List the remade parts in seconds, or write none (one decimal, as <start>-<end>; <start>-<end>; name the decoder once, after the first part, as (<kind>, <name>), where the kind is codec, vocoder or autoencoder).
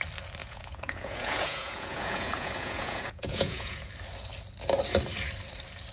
0.4-3.9 (vocoder, Vocos)